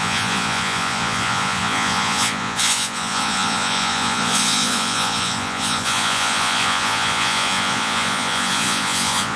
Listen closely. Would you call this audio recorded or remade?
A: remade